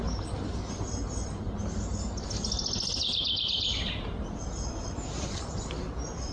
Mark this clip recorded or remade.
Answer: recorded